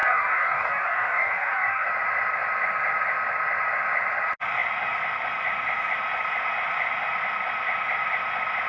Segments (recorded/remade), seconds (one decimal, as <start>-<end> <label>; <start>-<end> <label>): 0.0-1.9 remade; 1.9-8.7 recorded